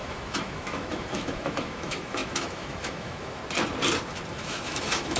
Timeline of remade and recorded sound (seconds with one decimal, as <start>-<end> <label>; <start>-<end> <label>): 0.0-3.4 remade; 3.4-4.3 recorded; 4.3-5.2 remade